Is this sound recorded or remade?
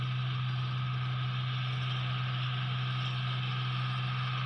recorded